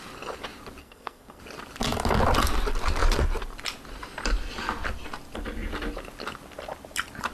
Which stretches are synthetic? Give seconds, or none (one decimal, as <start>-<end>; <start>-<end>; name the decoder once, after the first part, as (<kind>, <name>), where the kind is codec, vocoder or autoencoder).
0.8-1.4 (codec, SNAC)